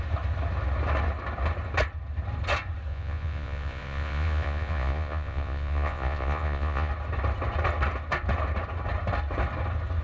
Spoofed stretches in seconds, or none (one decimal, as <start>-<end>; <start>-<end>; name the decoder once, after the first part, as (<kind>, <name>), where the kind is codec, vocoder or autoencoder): 2.9-6.9 (vocoder, Vocos)